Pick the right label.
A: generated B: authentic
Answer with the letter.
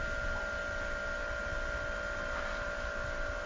B